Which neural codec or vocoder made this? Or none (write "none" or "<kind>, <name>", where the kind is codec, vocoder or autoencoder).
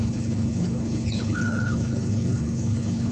codec, HILCodec